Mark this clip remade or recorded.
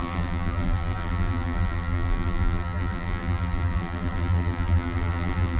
remade